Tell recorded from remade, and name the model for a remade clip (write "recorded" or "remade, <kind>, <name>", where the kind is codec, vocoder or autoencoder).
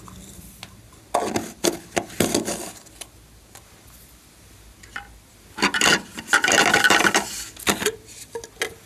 recorded